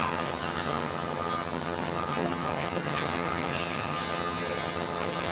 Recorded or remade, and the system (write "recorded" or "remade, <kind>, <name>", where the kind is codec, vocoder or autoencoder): remade, vocoder, HiFi-GAN